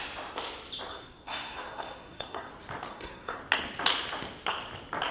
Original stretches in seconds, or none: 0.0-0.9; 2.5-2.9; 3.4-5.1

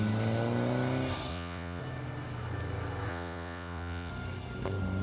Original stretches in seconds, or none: 0.0-1.3; 1.8-3.1; 4.1-5.0

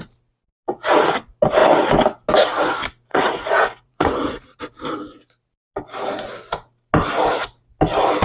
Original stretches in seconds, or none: 0.0-3.1; 4.6-8.2

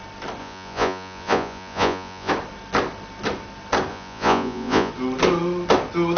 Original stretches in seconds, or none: 0.0-0.4; 2.3-3.9; 4.9-6.2

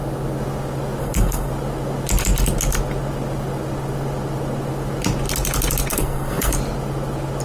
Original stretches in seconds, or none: 0.0-1.0; 1.5-5.9; 6.5-7.4

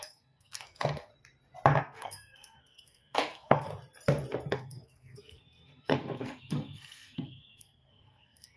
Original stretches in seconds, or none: 1.1-1.8; 3.7-4.5

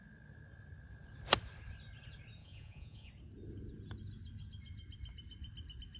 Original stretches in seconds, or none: 0.0-2.4; 3.1-6.0

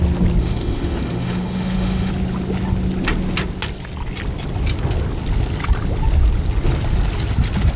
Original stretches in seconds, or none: 0.0-0.4; 2.1-7.8